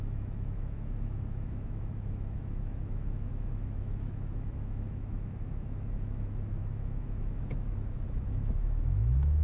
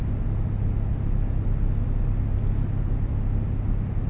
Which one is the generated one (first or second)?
first